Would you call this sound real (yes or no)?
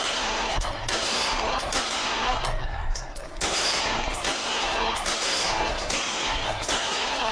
no